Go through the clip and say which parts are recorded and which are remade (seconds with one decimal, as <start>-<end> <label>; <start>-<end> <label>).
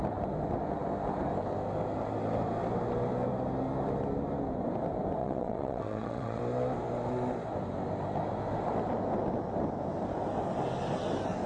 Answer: 0.0-5.2 recorded; 5.2-6.4 remade; 6.4-11.5 recorded